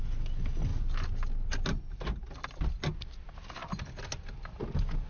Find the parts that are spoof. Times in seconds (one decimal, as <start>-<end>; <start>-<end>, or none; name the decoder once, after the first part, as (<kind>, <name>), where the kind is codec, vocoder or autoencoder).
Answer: none